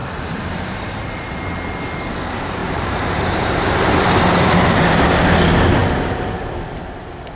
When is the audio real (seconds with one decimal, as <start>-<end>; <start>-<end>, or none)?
1.4-2.6; 5.0-5.8; 6.4-7.3